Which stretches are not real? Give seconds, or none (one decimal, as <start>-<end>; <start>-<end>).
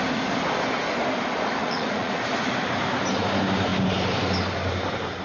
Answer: 1.6-2.2